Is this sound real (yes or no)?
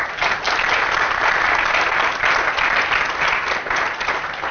yes